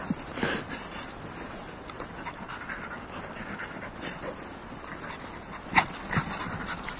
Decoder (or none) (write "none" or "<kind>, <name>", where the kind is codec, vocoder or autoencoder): none